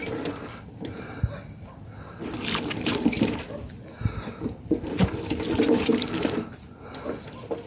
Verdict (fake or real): real